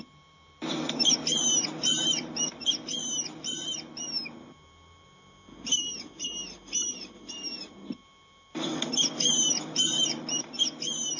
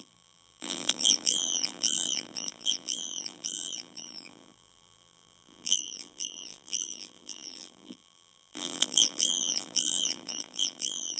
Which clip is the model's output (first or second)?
second